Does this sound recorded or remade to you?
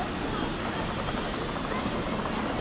recorded